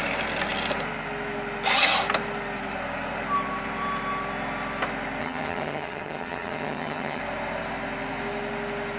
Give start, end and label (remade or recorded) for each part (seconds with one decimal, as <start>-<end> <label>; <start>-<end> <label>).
0.0-5.2 recorded; 5.2-7.2 remade; 7.2-9.0 recorded